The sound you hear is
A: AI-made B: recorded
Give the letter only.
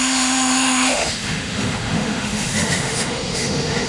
A